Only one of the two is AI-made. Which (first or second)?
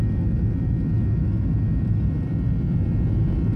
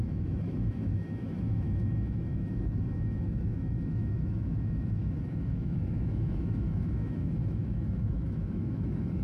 second